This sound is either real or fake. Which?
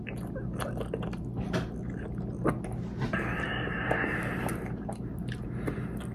real